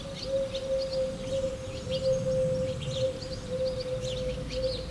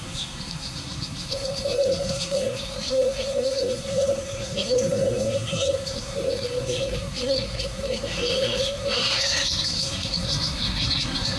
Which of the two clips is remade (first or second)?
second